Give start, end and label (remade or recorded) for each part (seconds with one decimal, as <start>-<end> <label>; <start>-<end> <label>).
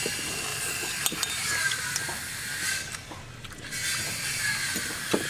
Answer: 0.0-5.3 recorded